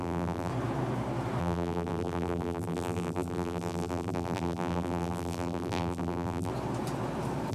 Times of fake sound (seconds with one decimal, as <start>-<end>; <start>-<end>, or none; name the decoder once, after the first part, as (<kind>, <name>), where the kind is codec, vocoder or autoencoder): 0.0-0.5 (vocoder, BigVGAN v2); 1.4-6.5